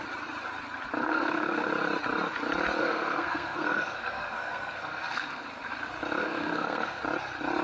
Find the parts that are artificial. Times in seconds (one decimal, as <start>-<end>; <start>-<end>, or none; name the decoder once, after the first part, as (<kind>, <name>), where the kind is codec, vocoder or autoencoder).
1.0-1.7 (codec, SNAC); 2.8-5.5; 6.2-7.0